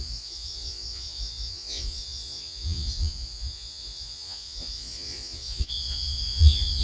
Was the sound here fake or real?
fake